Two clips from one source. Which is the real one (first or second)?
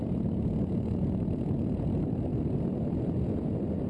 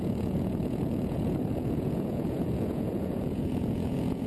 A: first